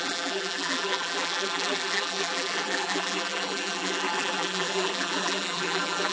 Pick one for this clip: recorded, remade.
remade